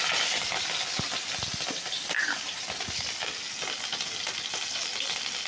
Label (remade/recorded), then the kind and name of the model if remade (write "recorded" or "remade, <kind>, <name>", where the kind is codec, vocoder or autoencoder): recorded